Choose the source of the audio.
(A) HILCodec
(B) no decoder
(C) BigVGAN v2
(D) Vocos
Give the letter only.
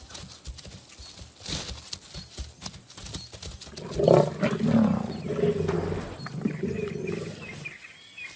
B